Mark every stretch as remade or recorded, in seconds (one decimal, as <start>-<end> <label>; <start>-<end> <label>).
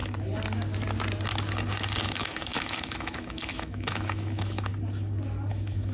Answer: 0.0-2.0 recorded; 2.0-4.7 remade; 4.7-5.5 recorded; 5.5-5.9 remade